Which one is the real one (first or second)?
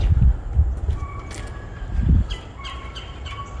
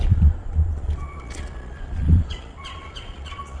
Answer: first